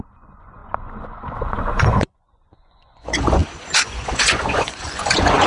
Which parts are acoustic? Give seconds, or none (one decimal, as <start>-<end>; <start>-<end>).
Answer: none